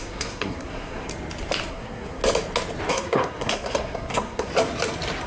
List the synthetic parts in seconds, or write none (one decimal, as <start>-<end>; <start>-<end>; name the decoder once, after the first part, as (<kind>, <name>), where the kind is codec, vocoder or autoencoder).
0.0-1.1 (codec, SNAC); 1.7-2.2; 2.9-4.5